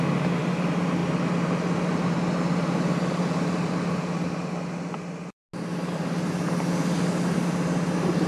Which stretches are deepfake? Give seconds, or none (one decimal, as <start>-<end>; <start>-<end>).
none